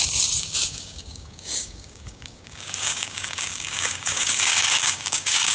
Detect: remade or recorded remade